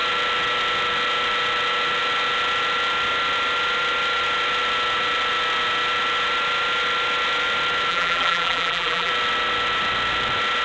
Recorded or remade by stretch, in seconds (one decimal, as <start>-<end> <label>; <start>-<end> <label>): 0.0-7.9 recorded; 7.9-9.1 remade; 9.1-10.6 recorded